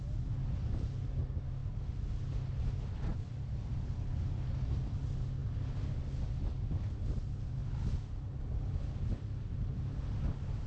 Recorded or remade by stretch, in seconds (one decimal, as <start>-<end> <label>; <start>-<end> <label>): 0.0-1.6 recorded; 1.6-2.7 remade; 2.7-3.1 recorded; 3.1-5.0 remade; 5.0-10.7 recorded